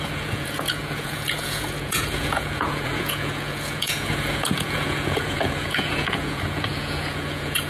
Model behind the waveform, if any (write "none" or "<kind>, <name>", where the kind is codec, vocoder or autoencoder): vocoder, Vocos